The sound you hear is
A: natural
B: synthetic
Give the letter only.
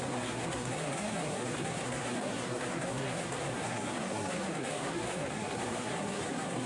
B